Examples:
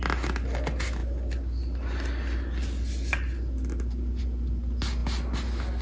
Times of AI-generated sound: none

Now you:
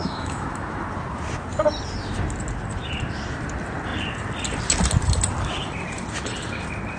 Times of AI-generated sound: 0.0-0.8 (autoencoder, DAC-VAE)

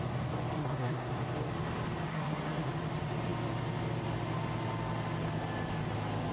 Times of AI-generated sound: 0.6-1.1 (codec, SNAC); 2.1-2.7

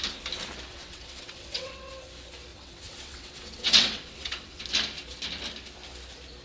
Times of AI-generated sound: 0.7-1.9 (vocoder, WaveNeXt); 2.5-4.6